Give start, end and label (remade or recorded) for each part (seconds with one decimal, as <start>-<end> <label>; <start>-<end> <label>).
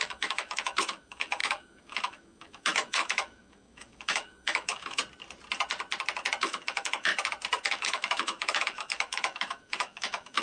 0.0-5.0 remade; 5.0-6.4 recorded; 6.4-7.1 remade; 7.1-7.7 recorded; 7.7-10.4 remade